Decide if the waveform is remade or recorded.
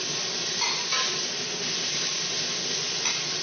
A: recorded